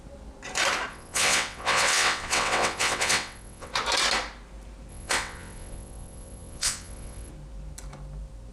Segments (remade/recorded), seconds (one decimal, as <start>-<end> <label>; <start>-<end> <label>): 0.0-0.9 recorded; 0.9-3.7 remade; 3.7-4.9 recorded; 4.9-7.3 remade; 7.3-8.5 recorded